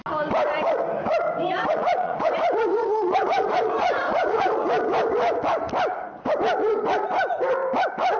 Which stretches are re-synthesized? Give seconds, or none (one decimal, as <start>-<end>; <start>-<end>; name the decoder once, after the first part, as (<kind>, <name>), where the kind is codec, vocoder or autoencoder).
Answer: 1.6-2.3 (vocoder, Vocos); 2.7-4.5